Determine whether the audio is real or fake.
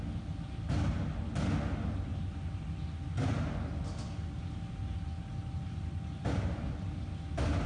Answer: real